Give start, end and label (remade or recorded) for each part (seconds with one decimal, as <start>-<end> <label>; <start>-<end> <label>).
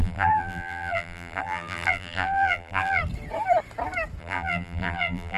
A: 0.0-3.0 remade; 3.0-4.2 recorded; 4.2-5.4 remade